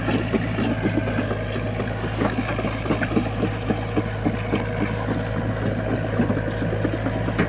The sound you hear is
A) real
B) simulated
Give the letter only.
A